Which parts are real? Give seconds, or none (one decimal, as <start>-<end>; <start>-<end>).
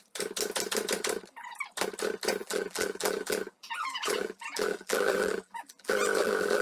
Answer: 0.0-2.4